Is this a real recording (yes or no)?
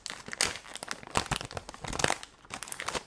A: yes